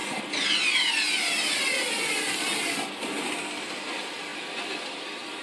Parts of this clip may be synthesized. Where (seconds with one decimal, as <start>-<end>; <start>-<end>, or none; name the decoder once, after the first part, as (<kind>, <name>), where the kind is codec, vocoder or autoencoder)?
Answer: none